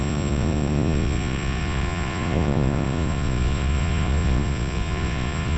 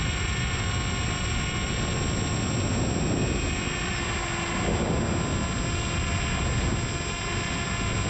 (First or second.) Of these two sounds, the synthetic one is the first